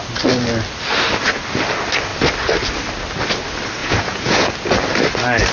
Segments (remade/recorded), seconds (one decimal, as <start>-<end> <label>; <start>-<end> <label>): 0.0-3.8 recorded; 3.8-4.5 remade; 4.5-5.5 recorded